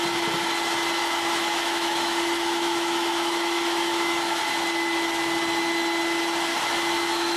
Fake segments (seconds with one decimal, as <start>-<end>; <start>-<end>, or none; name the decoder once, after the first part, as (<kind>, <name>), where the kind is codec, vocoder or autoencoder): 1.0-4.4 (autoencoder, DAC-VAE); 6.5-7.4